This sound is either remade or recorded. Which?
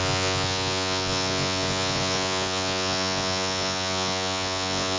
remade